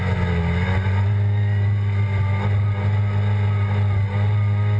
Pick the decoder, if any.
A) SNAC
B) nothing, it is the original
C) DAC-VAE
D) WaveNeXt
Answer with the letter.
B